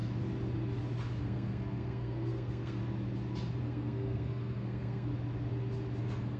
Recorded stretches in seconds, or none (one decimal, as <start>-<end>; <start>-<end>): 0.0-1.2; 2.8-3.6; 5.1-6.0